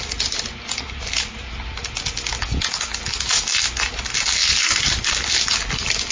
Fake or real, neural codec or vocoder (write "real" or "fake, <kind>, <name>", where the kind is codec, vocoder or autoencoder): real